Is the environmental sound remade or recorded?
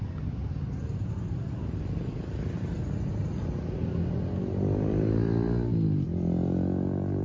recorded